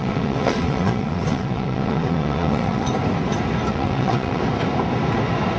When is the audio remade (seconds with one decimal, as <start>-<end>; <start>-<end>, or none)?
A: 0.0-2.9; 3.7-4.4